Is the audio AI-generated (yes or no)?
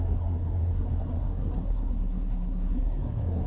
yes